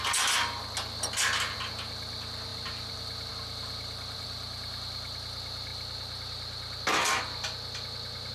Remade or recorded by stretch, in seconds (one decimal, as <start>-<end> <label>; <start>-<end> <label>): 0.0-8.3 recorded